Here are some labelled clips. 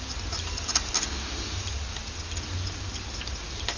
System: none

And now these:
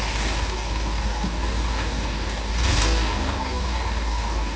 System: codec, DAC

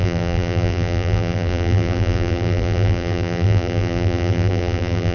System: vocoder, BigVGAN v2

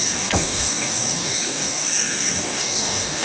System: codec, DAC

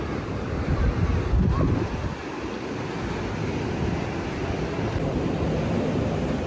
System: none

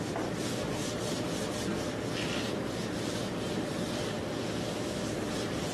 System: none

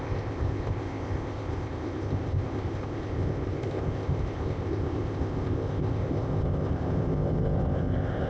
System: codec, ZipCodec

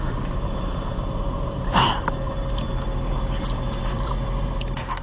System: vocoder, BigVGAN v2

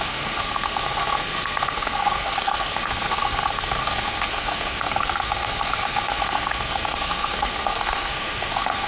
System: codec, SNAC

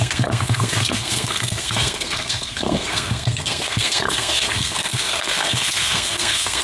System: codec, SNAC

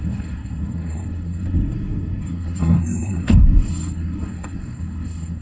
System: codec, SNAC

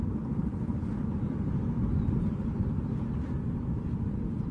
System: vocoder, BigVGAN v2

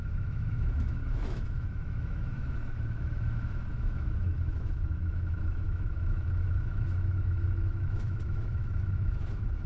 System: autoencoder, DAC-VAE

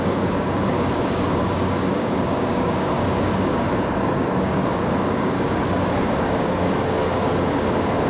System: codec, DAC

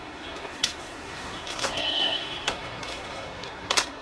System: codec, SNAC